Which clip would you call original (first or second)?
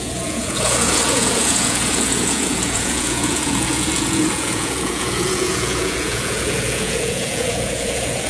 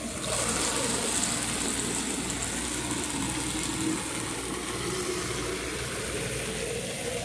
second